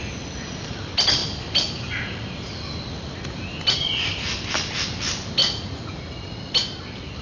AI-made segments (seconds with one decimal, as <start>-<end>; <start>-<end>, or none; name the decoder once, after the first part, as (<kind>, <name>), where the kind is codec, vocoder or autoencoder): 5.4-6.0 (vocoder, Vocos)